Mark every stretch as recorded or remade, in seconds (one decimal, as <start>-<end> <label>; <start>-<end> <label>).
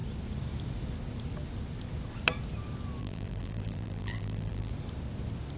0.0-3.0 recorded; 3.0-4.7 remade; 4.7-5.6 recorded